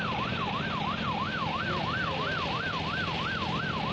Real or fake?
real